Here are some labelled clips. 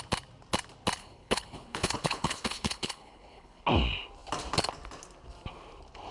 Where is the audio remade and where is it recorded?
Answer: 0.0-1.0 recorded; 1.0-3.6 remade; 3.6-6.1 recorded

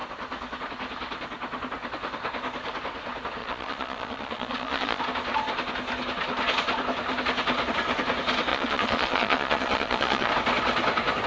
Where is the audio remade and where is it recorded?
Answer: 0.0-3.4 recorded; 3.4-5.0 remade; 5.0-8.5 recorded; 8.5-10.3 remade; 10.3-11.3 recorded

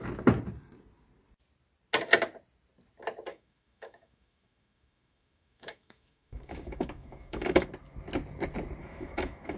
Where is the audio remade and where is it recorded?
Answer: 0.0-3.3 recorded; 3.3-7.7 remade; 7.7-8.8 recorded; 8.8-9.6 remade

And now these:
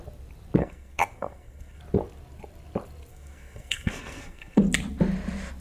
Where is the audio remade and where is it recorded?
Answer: 0.0-0.6 recorded; 0.6-1.8 remade; 1.8-3.1 recorded; 3.1-4.6 remade; 4.6-5.6 recorded

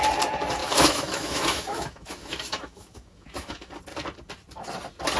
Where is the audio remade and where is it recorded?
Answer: 0.0-0.6 recorded; 0.6-3.7 remade; 3.7-5.2 recorded

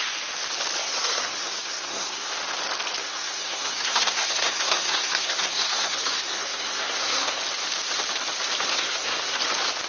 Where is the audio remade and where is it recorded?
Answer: 0.0-0.8 recorded; 0.8-2.4 remade; 2.4-3.0 recorded; 3.0-7.4 remade; 7.4-8.7 recorded; 8.7-9.4 remade; 9.4-9.9 recorded